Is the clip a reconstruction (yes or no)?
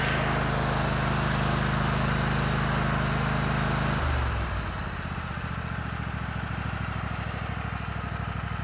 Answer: no